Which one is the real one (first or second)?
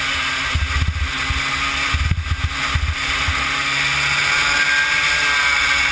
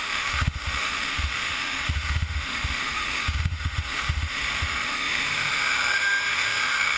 first